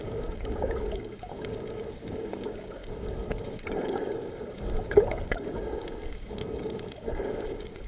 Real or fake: fake